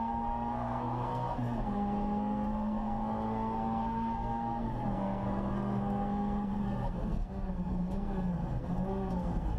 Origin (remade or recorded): remade